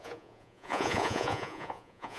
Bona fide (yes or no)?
no